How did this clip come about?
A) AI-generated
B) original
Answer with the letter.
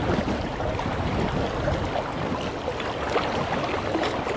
B